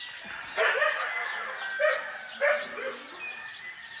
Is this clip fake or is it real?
real